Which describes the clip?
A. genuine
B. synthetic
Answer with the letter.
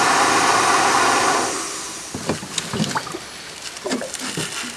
A